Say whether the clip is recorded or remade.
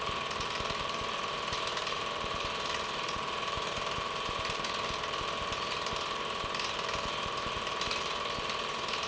remade